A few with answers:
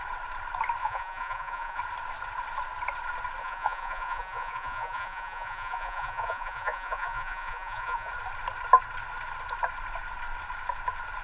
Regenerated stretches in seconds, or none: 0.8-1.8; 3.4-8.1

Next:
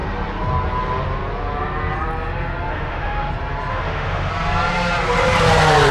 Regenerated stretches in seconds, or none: 2.7-3.3; 3.7-4.3

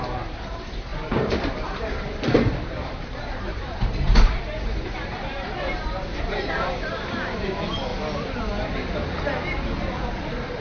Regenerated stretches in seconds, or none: 0.0-7.9; 9.9-10.6

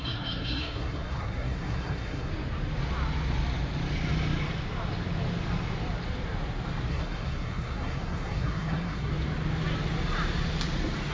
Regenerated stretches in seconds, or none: 0.0-2.3; 6.9-9.1

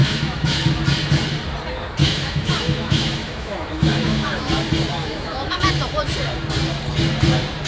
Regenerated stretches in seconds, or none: 0.0-0.6; 2.0-4.5; 5.0-5.7